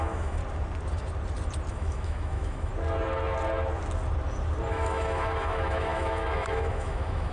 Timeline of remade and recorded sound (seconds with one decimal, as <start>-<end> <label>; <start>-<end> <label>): 0.0-0.4 remade; 0.4-1.7 recorded; 1.7-2.7 remade; 2.7-4.7 recorded; 4.7-7.3 remade